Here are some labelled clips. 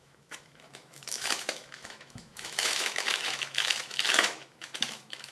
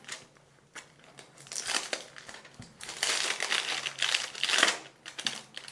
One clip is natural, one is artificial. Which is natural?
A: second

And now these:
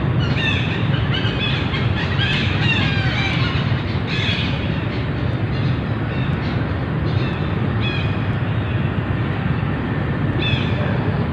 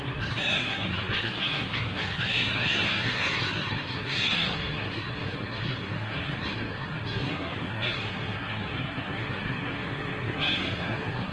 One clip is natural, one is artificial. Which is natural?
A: first